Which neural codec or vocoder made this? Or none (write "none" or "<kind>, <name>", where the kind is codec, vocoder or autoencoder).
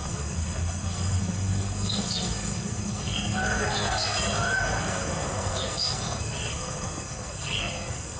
codec, SNAC